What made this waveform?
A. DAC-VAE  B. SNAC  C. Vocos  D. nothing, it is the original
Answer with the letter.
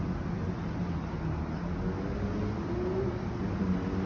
D